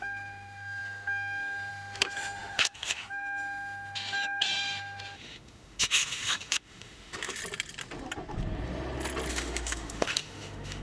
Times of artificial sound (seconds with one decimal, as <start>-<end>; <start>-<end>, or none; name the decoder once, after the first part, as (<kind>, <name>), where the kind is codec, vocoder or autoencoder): 0.0-7.4 (autoencoder, DAC-VAE); 9.3-10.8